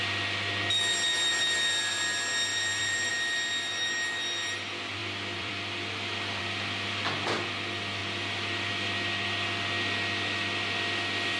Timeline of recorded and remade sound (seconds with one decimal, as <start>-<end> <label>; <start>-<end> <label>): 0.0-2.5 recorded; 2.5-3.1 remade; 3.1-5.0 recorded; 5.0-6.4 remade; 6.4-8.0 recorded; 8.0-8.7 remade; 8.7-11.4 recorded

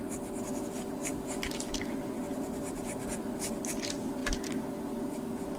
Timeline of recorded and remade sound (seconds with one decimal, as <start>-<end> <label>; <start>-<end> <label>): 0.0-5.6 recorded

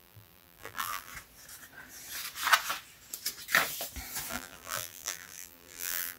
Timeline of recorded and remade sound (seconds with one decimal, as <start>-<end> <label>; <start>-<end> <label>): 0.0-1.1 remade; 1.1-4.3 recorded; 4.3-6.2 remade